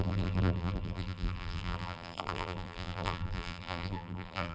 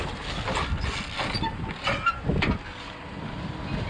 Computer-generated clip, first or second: first